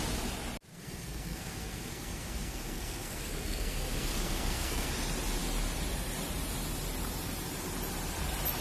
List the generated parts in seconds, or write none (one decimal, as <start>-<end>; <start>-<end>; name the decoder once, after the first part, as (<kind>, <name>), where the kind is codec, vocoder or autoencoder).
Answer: 0.7-4.9 (codec, SNAC)